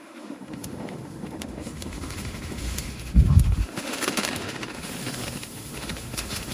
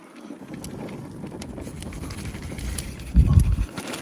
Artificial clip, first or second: first